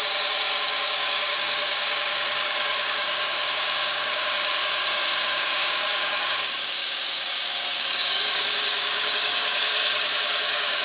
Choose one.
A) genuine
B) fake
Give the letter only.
B